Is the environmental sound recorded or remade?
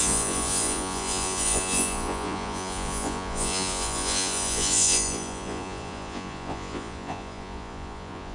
remade